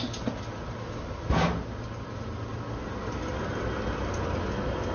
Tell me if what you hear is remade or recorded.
recorded